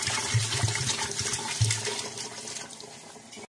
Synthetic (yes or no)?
no